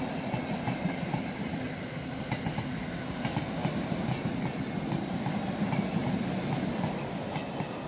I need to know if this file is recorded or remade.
recorded